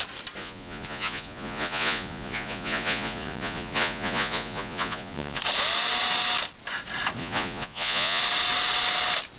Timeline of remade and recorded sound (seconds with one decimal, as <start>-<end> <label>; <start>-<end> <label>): 0.0-0.4 recorded; 0.4-5.4 remade; 5.4-7.2 recorded; 7.2-8.2 remade; 8.2-9.4 recorded